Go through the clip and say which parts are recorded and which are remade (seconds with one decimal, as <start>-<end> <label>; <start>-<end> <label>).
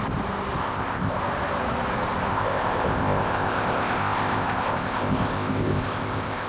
0.0-0.6 recorded; 0.6-1.2 remade; 1.2-2.3 recorded; 2.3-6.5 remade